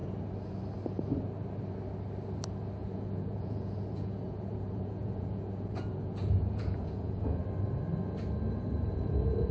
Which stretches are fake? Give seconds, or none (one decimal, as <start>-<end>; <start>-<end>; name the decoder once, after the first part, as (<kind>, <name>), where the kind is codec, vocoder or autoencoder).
2.8-7.4 (vocoder, Vocos); 8.9-9.5